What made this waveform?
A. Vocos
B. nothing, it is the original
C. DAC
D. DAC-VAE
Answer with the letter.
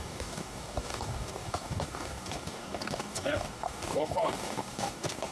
C